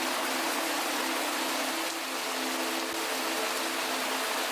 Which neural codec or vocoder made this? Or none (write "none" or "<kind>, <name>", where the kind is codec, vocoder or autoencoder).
none